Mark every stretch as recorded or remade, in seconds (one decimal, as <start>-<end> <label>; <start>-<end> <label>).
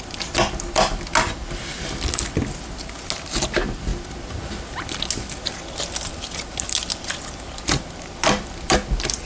0.0-9.3 recorded